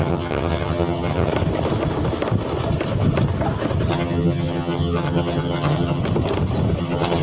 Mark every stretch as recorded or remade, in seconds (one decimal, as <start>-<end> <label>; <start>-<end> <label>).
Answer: 0.0-1.3 remade; 1.3-3.9 recorded; 3.9-6.0 remade; 6.0-6.8 recorded; 6.8-7.2 remade